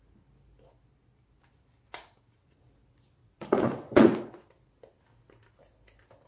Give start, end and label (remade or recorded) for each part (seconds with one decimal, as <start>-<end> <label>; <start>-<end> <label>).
0.0-3.2 recorded; 3.2-4.5 remade; 4.5-6.3 recorded